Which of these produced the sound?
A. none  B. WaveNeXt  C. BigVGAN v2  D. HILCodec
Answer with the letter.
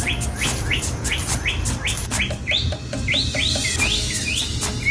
A